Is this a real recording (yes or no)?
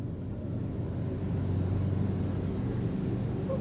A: yes